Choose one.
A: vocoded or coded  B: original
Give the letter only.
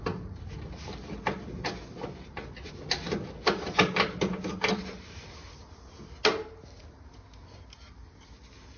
B